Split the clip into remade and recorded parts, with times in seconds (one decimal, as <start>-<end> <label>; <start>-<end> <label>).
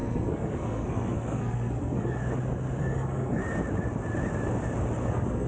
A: 0.0-2.2 remade; 2.2-2.8 recorded; 2.8-3.4 remade; 3.4-5.1 recorded; 5.1-5.5 remade